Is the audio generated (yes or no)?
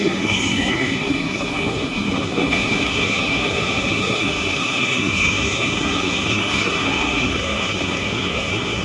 yes